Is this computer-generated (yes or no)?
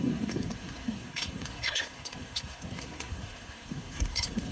yes